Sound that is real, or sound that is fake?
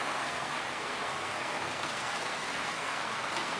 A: fake